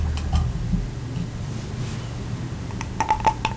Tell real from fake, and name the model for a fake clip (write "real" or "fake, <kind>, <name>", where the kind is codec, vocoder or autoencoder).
real